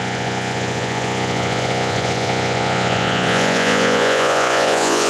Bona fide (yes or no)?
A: no